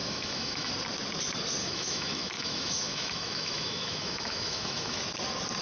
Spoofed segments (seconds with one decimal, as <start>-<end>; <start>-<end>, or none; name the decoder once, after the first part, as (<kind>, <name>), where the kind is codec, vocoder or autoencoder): 0.0-0.7 (autoencoder, DAC-VAE); 1.6-5.0